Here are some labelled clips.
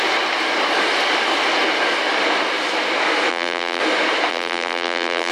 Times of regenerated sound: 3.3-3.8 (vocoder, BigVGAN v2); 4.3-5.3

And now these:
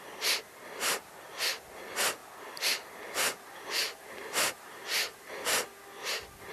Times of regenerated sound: 3.8-5.6 (vocoder, BigVGAN v2)